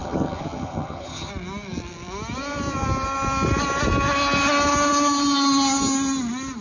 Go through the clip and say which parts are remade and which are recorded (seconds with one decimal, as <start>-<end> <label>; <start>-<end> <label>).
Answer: 0.0-1.3 remade; 1.3-6.6 recorded